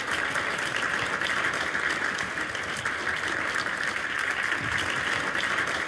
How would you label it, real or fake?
real